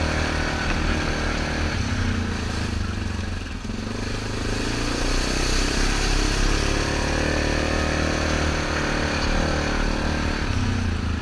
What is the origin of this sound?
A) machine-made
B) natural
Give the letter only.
B